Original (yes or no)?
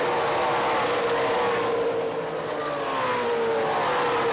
yes